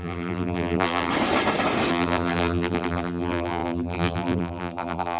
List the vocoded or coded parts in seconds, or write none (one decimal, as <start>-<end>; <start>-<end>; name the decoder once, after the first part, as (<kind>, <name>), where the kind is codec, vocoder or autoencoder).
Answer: 0.0-1.1 (vocoder, BigVGAN v2); 1.9-5.2